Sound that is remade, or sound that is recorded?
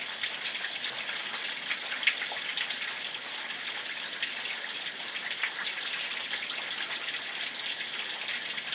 recorded